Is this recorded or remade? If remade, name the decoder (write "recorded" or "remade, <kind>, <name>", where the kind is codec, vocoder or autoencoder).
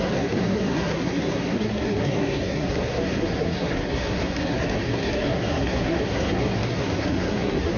remade, codec, SNAC